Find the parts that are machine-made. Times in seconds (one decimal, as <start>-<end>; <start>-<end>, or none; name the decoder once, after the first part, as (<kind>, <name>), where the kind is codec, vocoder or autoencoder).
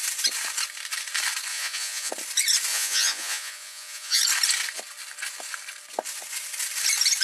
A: 1.5-2.1 (vocoder, Vocos); 2.7-4.2